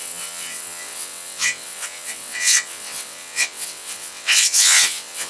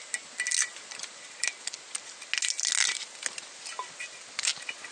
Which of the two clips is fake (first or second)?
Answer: first